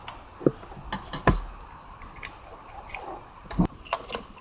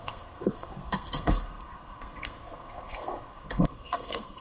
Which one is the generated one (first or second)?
second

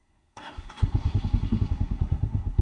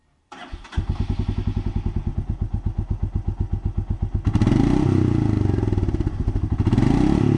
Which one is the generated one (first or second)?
first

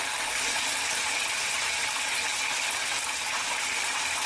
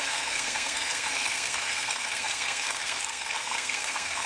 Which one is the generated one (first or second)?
second